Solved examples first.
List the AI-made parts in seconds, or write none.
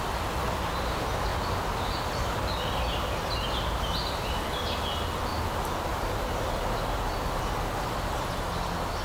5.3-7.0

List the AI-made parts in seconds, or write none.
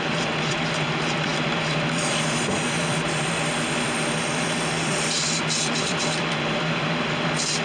0.0-7.6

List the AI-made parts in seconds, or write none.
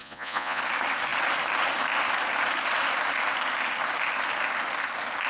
0.0-0.6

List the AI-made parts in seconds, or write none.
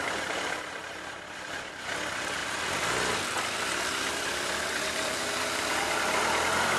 none